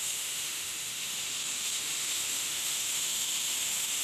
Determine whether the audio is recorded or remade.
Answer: remade